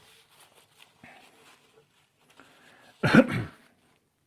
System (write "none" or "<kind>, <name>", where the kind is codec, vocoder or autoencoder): none